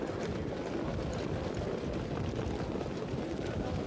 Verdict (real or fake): real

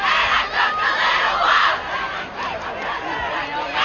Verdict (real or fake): real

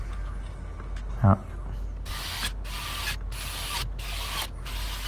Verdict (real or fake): real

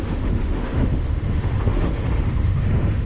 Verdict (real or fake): fake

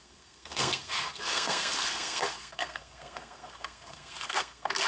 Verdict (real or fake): fake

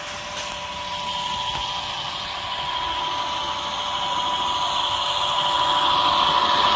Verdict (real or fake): real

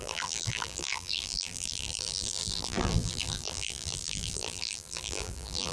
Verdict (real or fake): fake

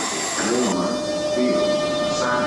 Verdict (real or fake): real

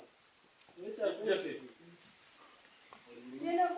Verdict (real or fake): real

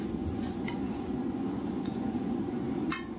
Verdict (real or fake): fake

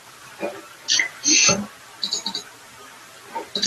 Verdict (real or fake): real